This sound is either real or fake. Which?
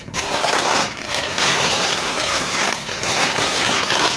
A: fake